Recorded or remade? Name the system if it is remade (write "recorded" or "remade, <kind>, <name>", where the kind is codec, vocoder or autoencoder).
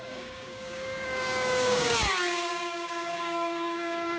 remade, codec, DAC